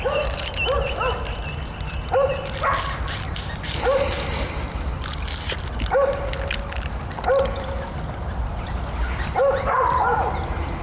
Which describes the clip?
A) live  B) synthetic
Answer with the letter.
A